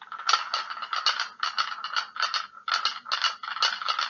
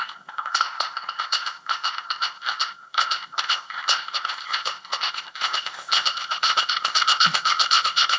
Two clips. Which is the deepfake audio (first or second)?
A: second